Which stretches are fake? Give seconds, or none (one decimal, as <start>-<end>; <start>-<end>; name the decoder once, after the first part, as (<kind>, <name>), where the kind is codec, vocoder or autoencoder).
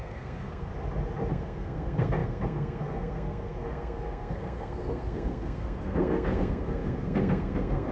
0.0-0.7 (codec, SNAC); 1.3-7.9